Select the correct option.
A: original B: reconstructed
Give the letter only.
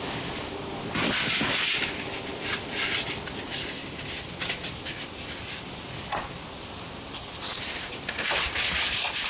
A